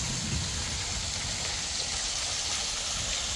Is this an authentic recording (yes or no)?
yes